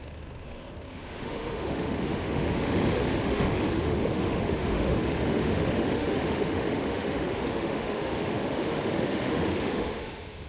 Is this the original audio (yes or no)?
no